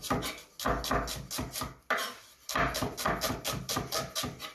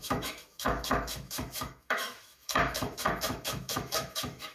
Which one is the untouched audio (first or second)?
first